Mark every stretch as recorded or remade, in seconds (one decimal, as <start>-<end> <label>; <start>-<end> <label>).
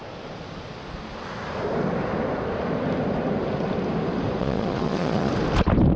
0.0-4.4 recorded; 4.4-5.3 remade; 5.3-6.0 recorded